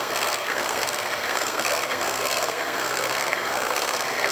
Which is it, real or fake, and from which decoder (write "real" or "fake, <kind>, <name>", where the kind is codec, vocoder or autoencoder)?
fake, codec, SNAC